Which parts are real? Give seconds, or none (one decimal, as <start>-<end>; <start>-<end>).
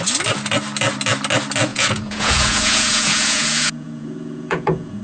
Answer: 0.0-1.7